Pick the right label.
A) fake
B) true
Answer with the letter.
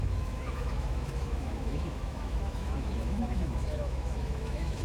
A